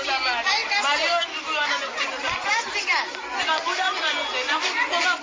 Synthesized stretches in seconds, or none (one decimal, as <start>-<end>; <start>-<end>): none